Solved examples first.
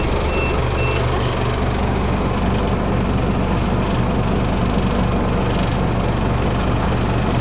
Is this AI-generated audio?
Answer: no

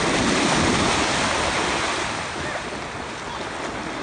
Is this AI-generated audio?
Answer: no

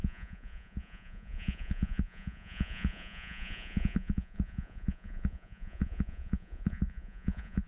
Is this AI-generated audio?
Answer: yes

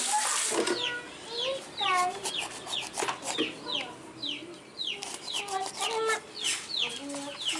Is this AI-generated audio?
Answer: no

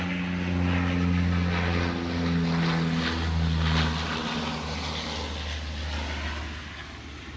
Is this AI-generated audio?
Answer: no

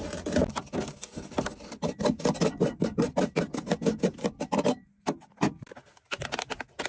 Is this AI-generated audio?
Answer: no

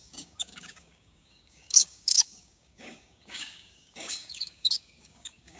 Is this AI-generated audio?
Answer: yes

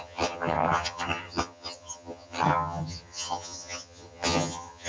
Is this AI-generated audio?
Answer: yes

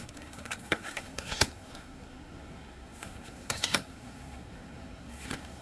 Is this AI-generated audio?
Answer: yes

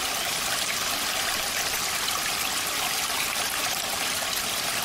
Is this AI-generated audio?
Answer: no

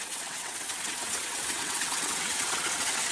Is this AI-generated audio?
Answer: yes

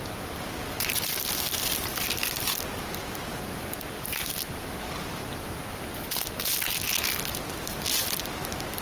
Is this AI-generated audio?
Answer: no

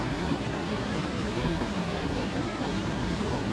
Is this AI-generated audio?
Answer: yes